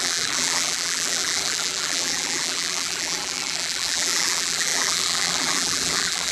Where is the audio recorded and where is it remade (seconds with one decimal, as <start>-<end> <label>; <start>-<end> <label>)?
0.0-6.3 remade